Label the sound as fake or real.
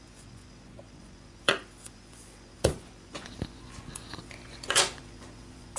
fake